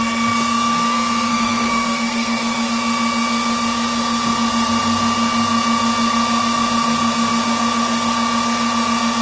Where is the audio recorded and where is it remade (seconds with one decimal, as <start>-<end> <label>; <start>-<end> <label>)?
0.0-1.3 recorded; 1.3-2.7 remade; 2.7-9.2 recorded